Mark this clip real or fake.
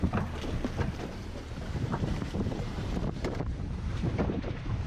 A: fake